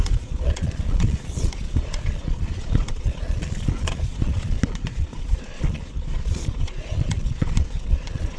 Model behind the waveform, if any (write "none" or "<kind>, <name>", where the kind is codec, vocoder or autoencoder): vocoder, Vocos